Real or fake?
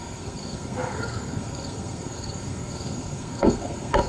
fake